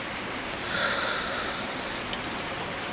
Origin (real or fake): real